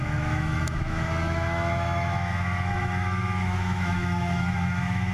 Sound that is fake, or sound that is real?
fake